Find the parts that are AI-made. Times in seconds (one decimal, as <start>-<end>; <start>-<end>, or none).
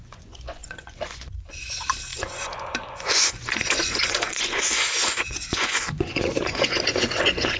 0.0-7.6